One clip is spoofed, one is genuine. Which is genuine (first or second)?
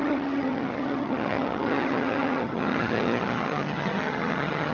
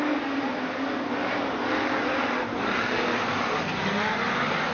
second